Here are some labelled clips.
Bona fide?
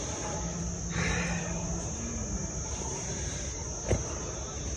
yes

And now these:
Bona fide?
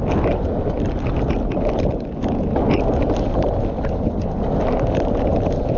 yes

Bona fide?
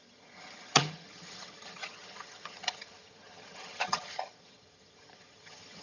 no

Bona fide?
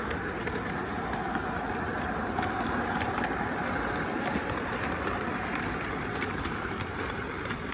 no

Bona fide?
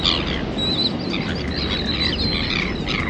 yes